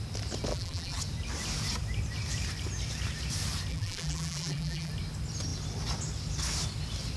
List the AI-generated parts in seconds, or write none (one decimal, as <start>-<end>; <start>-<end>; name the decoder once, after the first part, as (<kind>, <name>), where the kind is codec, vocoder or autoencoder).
0.5-1.0 (vocoder, BigVGAN v2); 3.7-4.9

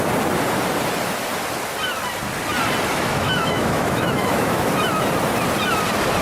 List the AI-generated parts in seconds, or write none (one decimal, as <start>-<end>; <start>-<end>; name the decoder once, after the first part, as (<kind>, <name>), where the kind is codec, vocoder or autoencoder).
2.9-4.7 (autoencoder, DAC-VAE)

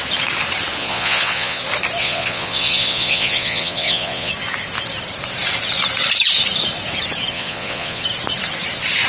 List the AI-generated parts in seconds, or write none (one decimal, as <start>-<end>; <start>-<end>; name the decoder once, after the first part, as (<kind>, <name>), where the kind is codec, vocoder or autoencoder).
0.8-1.6 (vocoder, Vocos); 2.0-4.3; 7.3-8.0

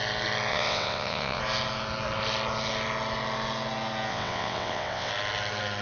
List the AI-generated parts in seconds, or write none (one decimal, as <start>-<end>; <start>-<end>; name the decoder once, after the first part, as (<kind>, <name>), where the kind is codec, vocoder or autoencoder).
0.5-1.4 (vocoder, WaveNeXt); 4.1-5.1

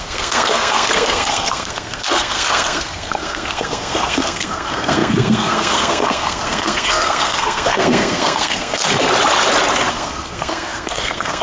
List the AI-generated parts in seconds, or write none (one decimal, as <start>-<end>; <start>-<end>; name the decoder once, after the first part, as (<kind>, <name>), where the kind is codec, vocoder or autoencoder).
0.0-8.8 (codec, SNAC); 9.9-11.4

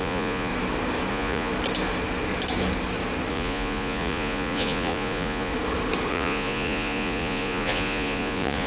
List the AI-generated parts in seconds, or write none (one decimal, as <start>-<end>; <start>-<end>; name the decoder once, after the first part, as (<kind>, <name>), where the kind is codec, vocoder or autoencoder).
0.0-0.5 (vocoder, Vocos); 1.1-1.5; 3.3-5.5; 6.1-8.7